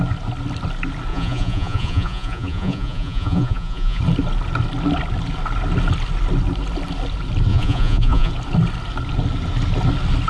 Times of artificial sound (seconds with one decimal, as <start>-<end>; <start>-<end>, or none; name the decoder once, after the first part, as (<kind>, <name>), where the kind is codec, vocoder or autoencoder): 1.1-4.0 (vocoder, Vocos); 7.5-8.3